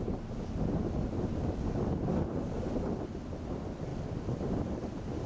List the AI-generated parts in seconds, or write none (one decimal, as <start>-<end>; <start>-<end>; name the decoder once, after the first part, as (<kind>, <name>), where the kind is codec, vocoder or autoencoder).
none